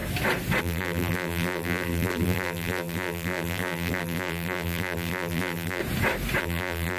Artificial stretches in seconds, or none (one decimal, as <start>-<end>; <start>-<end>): 0.6-5.8; 6.4-7.0